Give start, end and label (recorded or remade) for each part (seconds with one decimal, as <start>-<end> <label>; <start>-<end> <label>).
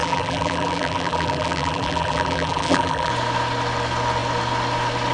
0.0-3.1 remade; 3.1-5.1 recorded